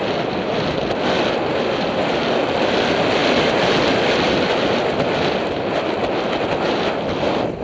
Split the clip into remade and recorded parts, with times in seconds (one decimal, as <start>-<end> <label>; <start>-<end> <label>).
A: 0.0-7.6 recorded